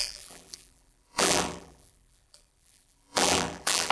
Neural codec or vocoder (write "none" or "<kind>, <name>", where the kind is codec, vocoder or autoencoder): vocoder, BigVGAN v2